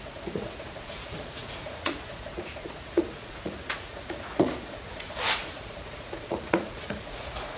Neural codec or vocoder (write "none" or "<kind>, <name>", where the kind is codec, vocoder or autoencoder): vocoder, Vocos